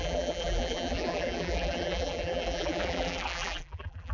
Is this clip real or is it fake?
fake